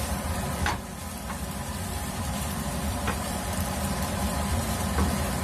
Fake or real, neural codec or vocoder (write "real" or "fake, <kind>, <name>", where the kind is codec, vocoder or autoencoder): fake, vocoder, BigVGAN v2